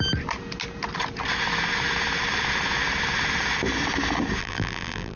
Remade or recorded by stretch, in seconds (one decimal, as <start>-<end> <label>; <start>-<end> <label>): 0.0-4.4 recorded; 4.4-5.2 remade